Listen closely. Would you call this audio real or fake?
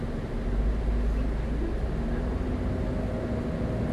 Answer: real